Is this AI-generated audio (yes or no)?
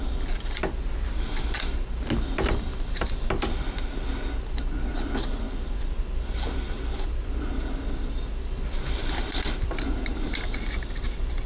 no